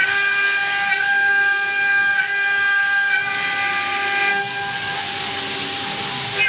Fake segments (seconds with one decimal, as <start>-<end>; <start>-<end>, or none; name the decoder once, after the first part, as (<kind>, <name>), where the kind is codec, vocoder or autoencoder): 0.0-3.3 (codec, DAC); 4.3-5.4